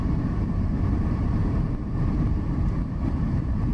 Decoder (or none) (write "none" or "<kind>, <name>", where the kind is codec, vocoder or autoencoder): vocoder, BigVGAN v2